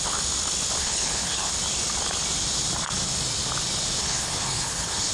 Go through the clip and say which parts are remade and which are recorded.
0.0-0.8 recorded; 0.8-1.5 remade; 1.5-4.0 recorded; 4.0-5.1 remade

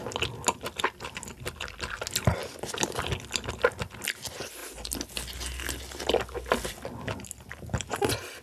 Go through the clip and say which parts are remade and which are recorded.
0.0-8.4 recorded